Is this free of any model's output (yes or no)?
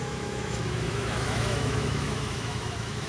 no